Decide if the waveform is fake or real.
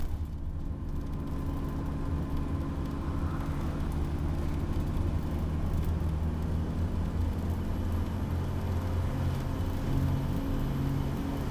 real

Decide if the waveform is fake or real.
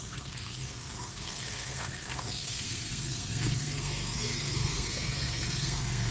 fake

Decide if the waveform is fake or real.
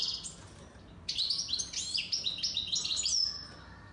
real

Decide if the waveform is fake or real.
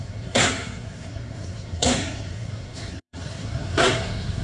fake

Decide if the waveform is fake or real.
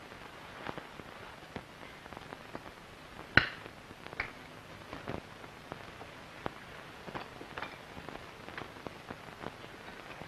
real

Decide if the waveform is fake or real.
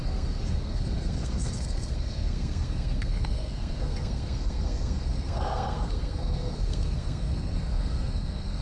fake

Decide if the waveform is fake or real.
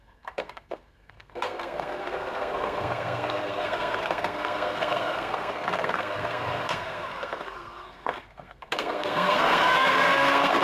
fake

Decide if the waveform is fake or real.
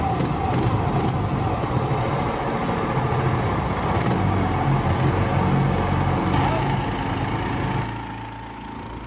real